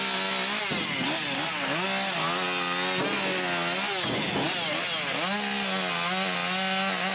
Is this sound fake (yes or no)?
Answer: no